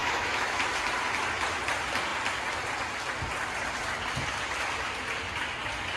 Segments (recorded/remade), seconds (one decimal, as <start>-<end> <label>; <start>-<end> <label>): 0.0-0.6 remade; 0.6-6.0 recorded